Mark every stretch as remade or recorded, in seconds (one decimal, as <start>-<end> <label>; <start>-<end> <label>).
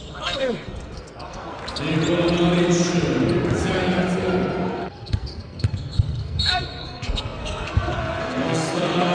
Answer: 0.0-1.6 remade; 1.6-4.7 recorded; 4.7-9.1 remade